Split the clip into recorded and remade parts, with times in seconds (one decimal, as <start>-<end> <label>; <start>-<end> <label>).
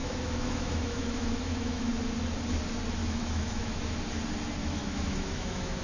0.0-1.9 remade; 1.9-3.0 recorded; 3.0-3.8 remade; 3.8-4.6 recorded; 4.6-5.8 remade